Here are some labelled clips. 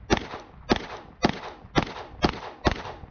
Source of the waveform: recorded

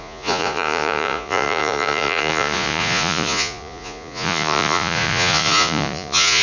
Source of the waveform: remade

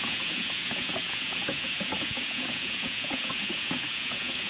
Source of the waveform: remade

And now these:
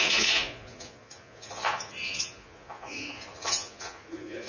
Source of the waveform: remade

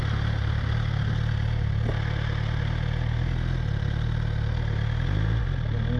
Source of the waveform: recorded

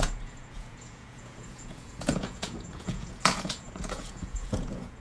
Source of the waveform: remade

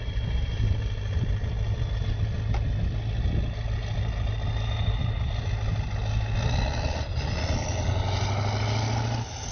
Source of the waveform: recorded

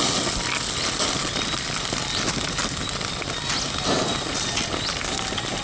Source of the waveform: recorded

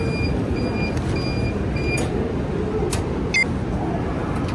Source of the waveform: recorded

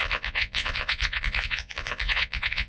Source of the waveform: remade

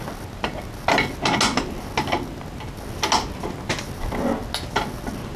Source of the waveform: recorded